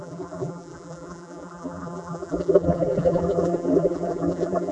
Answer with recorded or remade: remade